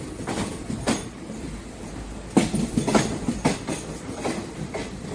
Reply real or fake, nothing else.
real